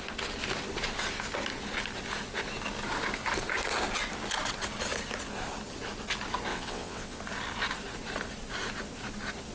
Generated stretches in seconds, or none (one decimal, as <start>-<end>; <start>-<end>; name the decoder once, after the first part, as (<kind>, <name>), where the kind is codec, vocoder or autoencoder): 6.5-7.2 (vocoder, WaveNeXt)